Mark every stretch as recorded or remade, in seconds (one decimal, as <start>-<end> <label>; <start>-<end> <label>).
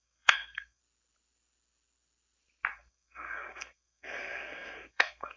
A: 0.0-0.8 remade; 0.8-2.7 recorded; 2.7-5.4 remade